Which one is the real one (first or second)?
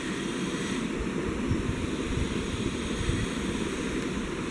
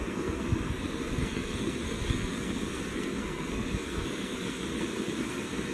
first